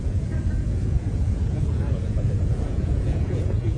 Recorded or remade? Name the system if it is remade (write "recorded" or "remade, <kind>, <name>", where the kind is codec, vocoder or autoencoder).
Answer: remade, vocoder, Vocos